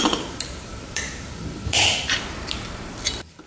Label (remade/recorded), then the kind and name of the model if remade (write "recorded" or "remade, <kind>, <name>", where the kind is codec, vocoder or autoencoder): remade, vocoder, BigVGAN v2